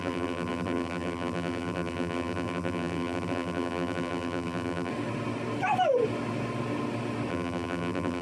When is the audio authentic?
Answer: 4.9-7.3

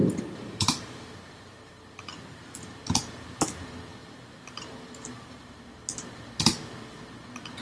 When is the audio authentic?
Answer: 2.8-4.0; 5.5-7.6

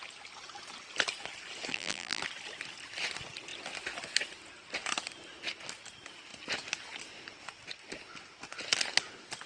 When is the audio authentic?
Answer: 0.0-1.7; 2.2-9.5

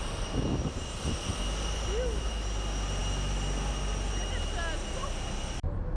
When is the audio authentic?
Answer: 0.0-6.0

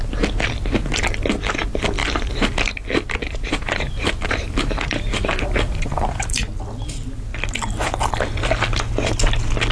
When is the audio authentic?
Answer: 0.0-2.0; 2.7-3.2; 6.4-9.7